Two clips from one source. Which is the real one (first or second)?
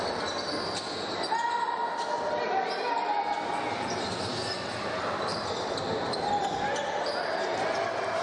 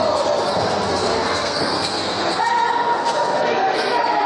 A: first